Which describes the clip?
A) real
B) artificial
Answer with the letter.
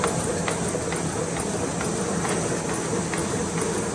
A